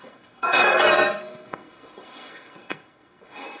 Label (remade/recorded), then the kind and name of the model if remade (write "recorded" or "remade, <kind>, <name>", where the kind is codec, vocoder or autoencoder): remade, codec, SNAC